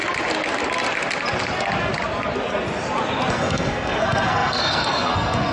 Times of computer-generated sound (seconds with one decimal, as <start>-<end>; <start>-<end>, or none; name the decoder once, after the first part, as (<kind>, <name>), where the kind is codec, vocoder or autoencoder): 3.3-5.5 (codec, SNAC)